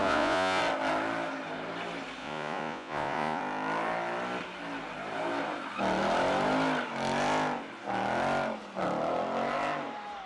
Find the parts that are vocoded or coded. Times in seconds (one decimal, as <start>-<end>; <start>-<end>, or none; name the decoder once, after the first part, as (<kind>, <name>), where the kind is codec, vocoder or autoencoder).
0.0-0.6 (vocoder, Vocos); 2.2-3.4